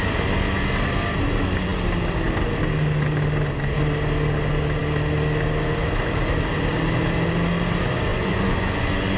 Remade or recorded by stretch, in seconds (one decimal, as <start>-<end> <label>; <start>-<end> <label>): 0.0-8.1 recorded; 8.1-9.2 remade